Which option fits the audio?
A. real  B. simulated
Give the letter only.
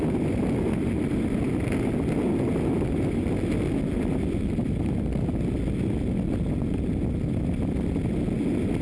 A